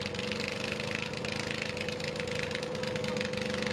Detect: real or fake real